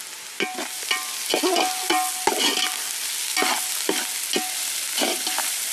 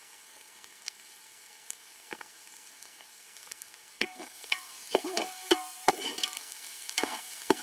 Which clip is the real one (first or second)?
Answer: first